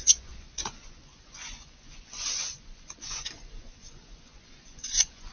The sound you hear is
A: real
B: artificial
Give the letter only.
B